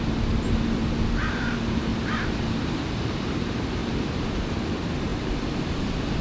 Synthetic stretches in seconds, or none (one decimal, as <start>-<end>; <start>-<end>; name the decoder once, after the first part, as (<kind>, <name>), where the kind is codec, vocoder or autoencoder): 0.0-1.9 (vocoder, BigVGAN v2); 2.7-6.2